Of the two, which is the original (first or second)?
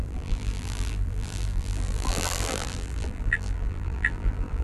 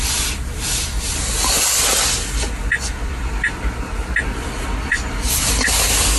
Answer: second